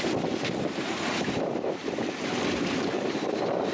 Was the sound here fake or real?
real